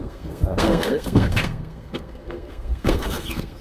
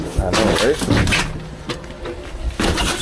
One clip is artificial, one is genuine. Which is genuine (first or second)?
second